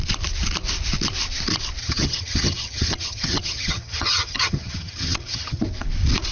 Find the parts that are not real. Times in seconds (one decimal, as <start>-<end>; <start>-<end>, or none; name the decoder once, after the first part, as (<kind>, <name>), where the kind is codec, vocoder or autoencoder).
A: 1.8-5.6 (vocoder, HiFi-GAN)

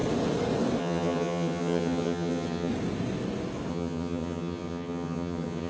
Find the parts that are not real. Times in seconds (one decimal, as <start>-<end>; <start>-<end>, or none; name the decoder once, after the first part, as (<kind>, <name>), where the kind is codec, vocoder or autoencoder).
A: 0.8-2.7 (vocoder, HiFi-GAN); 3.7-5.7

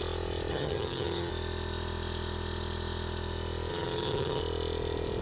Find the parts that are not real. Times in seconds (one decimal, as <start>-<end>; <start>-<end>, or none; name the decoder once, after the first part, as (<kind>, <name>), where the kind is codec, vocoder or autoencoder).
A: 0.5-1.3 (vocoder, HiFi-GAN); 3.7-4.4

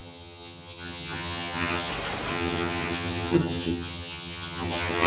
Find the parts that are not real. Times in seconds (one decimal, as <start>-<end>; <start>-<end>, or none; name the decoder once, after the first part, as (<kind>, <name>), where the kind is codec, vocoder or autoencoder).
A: 0.0-1.9 (vocoder, HiFi-GAN); 2.3-5.1